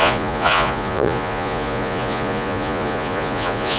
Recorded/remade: remade